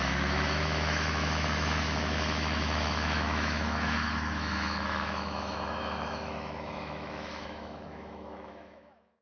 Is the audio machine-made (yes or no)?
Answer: yes